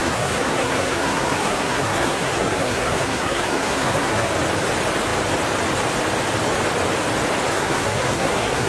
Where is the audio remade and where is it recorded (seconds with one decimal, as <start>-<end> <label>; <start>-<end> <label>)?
0.0-4.3 remade; 4.3-7.5 recorded; 7.5-8.7 remade